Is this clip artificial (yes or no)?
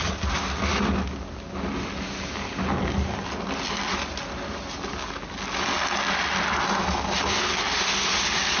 no